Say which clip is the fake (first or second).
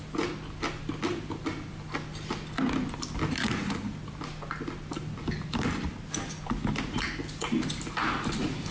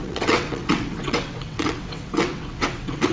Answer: second